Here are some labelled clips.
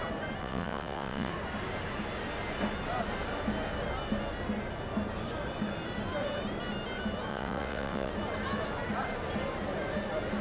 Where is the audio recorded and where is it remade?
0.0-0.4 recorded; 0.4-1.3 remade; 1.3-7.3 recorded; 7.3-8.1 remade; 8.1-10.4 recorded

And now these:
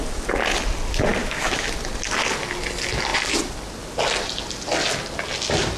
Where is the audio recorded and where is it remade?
0.0-1.2 recorded; 1.2-1.7 remade; 1.7-5.8 recorded

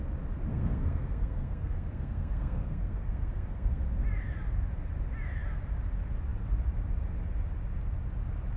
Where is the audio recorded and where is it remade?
0.0-0.5 recorded; 0.5-3.8 remade; 3.8-8.6 recorded

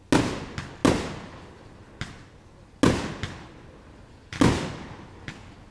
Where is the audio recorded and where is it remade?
0.0-5.7 recorded

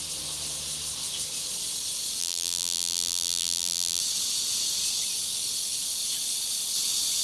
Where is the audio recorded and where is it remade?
0.0-2.2 recorded; 2.2-4.0 remade; 4.0-7.2 recorded